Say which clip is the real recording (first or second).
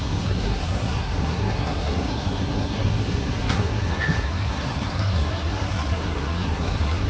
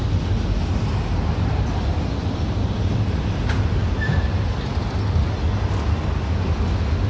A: second